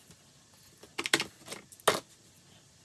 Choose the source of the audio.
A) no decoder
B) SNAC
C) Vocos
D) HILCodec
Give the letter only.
A